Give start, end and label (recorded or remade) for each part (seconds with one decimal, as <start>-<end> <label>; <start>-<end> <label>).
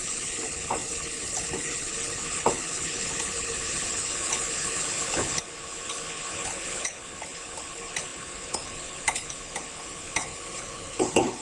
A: 0.0-11.4 remade